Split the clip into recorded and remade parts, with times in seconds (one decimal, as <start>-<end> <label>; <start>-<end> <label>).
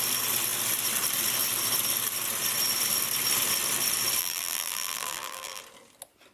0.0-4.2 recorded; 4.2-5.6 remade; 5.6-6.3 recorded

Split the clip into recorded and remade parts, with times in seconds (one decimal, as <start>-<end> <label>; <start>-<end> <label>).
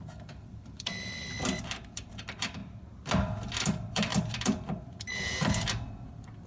0.0-2.6 remade; 2.6-3.5 recorded; 3.5-6.5 remade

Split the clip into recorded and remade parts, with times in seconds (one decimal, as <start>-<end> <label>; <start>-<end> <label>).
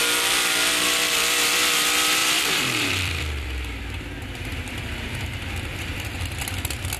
0.0-2.2 recorded; 2.2-6.4 remade; 6.4-7.0 recorded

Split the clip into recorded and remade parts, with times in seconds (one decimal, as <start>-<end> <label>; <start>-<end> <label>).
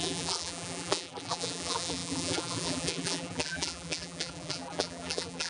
0.0-5.5 remade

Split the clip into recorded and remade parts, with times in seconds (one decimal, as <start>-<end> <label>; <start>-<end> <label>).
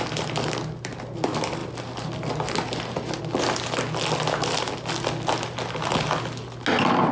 0.0-7.1 recorded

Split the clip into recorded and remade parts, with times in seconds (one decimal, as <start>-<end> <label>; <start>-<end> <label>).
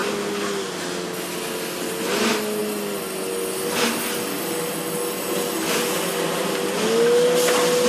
0.0-7.9 recorded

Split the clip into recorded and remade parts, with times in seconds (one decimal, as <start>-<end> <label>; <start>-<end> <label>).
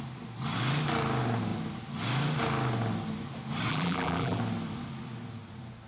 0.0-3.7 recorded; 3.7-4.4 remade; 4.4-5.9 recorded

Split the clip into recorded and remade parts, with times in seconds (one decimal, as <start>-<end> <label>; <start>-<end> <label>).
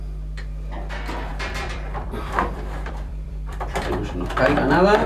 0.0-1.3 recorded; 1.3-4.3 remade; 4.3-5.1 recorded